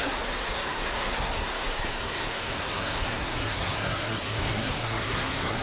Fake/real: fake